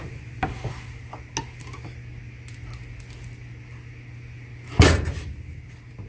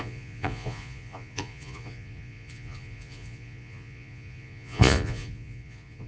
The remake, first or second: second